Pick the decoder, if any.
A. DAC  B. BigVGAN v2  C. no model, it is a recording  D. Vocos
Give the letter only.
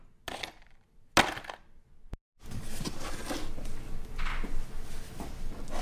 C